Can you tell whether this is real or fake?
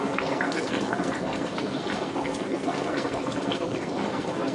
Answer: fake